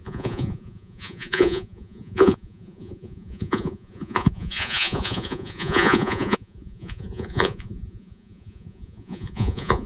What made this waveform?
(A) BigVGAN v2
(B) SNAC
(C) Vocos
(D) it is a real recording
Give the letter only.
C